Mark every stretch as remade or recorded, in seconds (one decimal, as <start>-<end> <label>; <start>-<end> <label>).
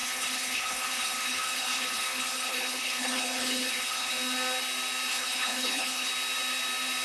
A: 0.0-4.1 remade; 4.1-5.1 recorded; 5.1-6.1 remade; 6.1-7.0 recorded